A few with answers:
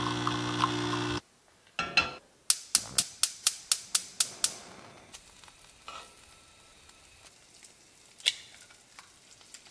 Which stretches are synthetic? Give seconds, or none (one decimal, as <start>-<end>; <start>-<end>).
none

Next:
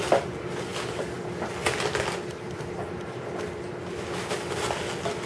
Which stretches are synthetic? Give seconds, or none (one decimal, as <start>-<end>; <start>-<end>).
none

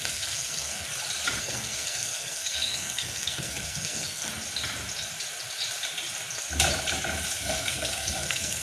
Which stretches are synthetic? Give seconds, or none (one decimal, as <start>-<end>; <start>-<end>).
0.0-0.9; 1.4-4.3; 7.4-8.6

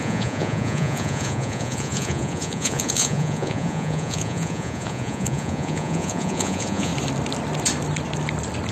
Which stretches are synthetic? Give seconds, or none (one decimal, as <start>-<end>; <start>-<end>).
0.0-6.9